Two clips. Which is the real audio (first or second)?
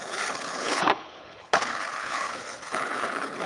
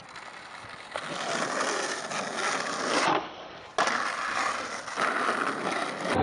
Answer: second